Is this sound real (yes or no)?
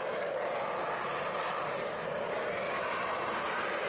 yes